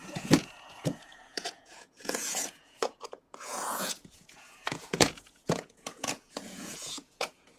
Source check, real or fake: fake